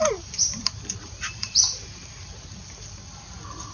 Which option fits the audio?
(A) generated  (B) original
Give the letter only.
A